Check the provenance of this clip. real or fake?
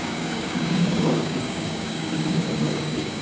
fake